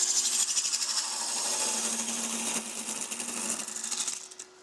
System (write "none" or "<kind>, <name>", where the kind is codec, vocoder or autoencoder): none